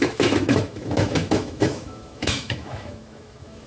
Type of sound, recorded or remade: remade